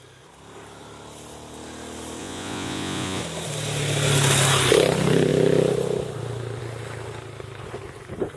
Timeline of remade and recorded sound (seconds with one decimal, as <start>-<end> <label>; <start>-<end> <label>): 0.0-2.2 recorded; 2.2-3.2 remade; 3.2-8.4 recorded